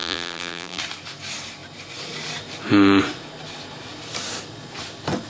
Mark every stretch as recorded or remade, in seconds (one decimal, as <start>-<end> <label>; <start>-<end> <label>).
0.0-0.8 remade; 0.8-5.3 recorded